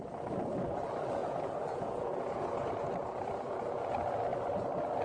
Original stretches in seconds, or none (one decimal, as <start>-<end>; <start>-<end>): 0.0-1.2; 3.9-5.0